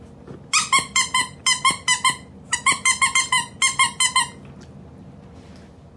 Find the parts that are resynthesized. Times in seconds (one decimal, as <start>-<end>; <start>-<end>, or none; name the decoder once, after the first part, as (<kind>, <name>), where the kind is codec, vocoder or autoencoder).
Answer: none